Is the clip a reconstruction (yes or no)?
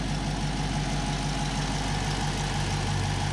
no